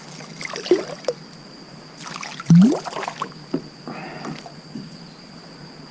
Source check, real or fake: real